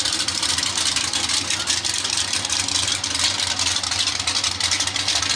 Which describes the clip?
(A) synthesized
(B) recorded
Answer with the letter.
B